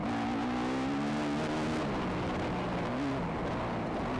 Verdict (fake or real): real